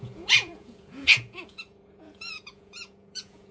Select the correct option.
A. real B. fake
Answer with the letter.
B